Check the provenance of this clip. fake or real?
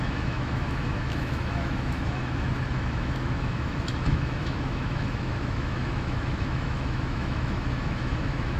fake